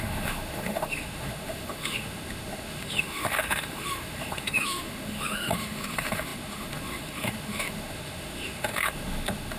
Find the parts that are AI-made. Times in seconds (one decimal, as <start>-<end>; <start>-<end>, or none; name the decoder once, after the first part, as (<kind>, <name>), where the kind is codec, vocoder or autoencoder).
0.0-9.6 (autoencoder, DAC-VAE)

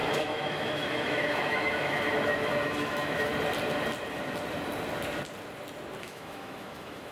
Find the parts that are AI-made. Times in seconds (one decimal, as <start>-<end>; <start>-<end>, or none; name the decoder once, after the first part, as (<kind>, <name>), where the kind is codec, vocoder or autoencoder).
0.0-3.3 (autoencoder, DAC-VAE); 6.0-7.1

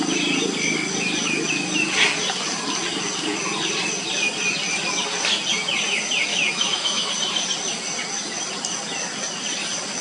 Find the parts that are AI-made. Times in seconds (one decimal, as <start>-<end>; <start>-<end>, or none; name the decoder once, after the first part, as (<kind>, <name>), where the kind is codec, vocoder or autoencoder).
6.3-7.1 (autoencoder, DAC-VAE)